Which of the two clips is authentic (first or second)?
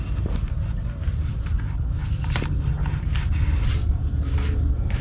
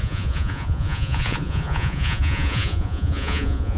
first